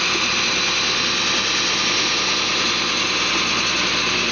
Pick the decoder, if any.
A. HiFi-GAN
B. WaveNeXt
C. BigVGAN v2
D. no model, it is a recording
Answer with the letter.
D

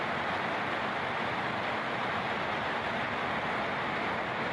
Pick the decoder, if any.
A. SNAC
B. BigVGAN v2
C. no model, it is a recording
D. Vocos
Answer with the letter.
C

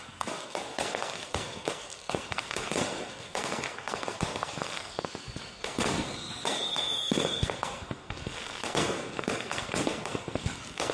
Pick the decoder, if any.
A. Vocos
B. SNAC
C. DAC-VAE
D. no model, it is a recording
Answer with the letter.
B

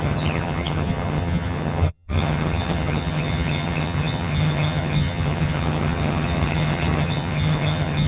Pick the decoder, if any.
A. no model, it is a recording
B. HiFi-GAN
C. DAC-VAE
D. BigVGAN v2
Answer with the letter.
B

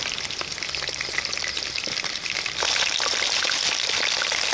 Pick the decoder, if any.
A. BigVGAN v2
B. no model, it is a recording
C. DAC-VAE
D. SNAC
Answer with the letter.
A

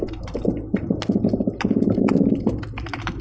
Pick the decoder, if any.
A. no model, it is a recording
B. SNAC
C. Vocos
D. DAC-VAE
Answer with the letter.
A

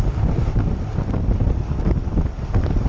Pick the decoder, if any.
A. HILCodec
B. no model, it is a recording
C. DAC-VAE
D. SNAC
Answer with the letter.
B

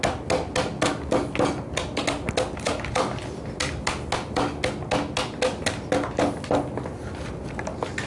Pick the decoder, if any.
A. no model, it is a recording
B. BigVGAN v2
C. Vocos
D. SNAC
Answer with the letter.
A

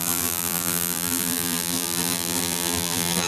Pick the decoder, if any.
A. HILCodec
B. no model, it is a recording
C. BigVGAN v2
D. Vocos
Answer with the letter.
C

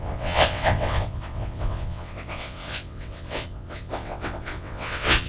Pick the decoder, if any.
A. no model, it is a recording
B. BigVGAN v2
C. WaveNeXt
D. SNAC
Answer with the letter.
C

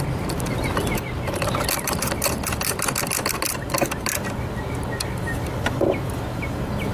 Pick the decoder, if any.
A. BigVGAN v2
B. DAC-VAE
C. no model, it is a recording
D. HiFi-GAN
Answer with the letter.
C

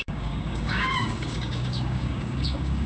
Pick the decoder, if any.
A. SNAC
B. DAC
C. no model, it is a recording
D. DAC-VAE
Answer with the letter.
B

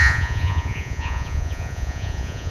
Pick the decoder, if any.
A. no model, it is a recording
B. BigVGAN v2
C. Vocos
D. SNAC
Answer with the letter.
C